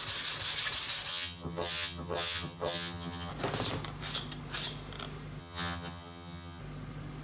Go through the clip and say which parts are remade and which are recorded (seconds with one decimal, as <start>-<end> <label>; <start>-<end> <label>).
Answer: 0.0-1.1 recorded; 1.1-3.3 remade; 3.3-5.4 recorded; 5.4-6.6 remade; 6.6-7.2 recorded